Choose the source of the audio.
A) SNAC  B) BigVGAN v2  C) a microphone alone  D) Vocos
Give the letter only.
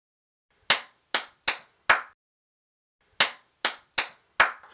C